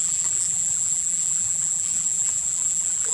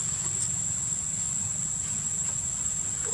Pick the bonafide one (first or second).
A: second